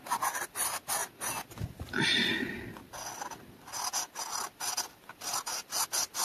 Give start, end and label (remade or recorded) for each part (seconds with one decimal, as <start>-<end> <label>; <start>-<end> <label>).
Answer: 0.0-6.2 recorded